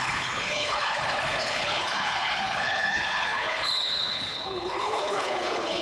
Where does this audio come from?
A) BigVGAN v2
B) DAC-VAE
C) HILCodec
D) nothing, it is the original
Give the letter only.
C